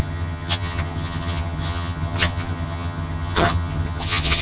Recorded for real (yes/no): no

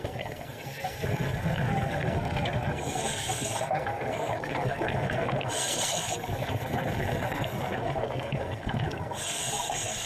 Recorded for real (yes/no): no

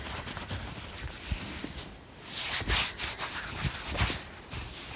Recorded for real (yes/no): yes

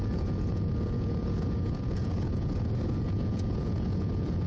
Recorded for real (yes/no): no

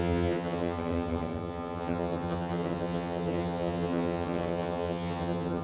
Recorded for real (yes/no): no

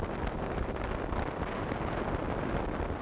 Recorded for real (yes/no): yes